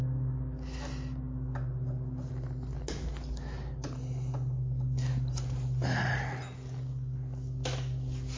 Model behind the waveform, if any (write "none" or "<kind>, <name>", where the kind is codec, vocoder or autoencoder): none